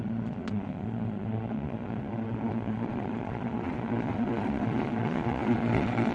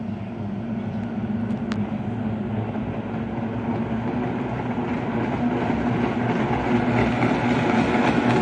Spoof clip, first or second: first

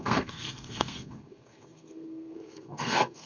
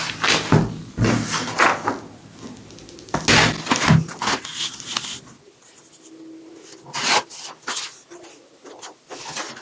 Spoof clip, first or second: first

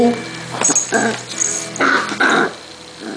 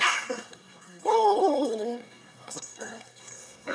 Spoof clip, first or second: second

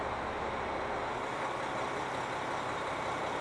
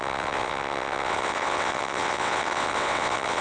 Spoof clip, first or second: second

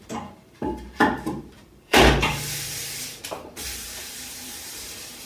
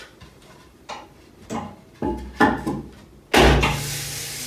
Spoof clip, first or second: first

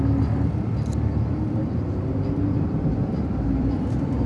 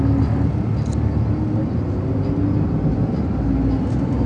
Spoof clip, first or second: first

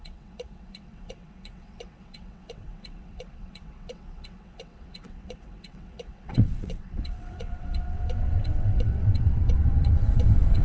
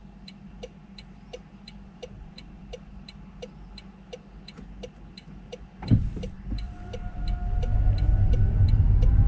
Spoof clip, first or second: first